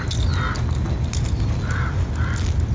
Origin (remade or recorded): recorded